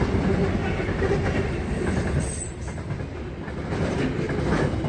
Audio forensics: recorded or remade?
recorded